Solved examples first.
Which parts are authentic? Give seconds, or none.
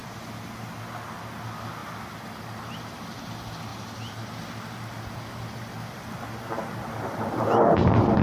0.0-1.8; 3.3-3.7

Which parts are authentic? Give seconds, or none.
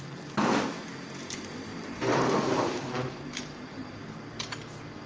0.0-1.7; 4.0-5.1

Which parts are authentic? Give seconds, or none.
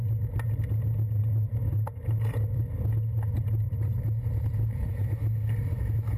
0.0-1.2; 4.9-6.2